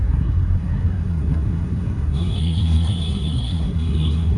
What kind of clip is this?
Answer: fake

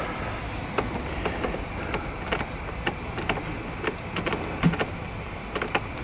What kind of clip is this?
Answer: real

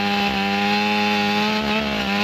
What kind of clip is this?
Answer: real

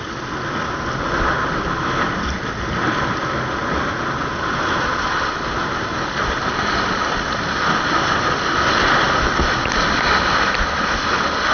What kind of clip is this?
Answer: real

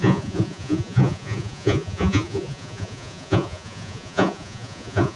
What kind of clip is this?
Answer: fake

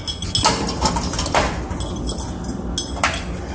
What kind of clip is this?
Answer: real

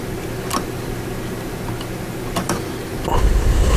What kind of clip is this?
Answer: real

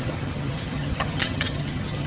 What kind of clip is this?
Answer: fake